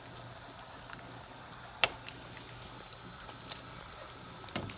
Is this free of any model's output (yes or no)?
yes